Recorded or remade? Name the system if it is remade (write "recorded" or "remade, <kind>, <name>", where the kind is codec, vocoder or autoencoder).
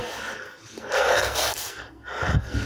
remade, codec, SNAC